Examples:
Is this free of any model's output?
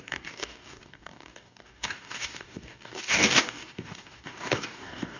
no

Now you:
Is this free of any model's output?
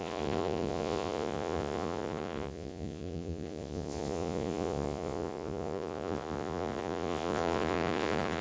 no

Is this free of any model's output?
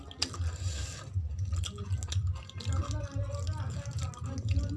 yes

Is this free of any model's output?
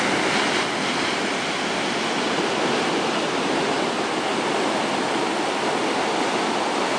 yes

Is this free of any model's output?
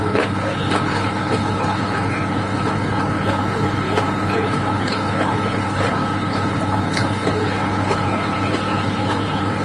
no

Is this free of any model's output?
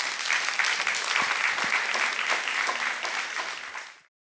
yes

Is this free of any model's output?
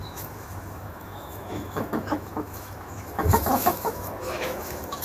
no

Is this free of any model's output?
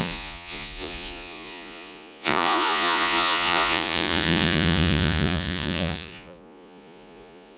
no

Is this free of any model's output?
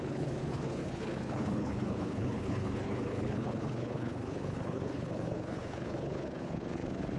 no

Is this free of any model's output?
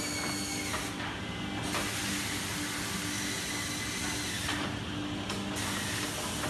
yes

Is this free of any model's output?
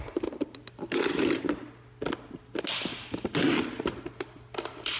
yes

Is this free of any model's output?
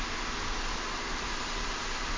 yes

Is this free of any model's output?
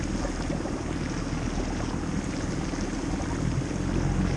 yes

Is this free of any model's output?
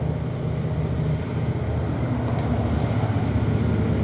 yes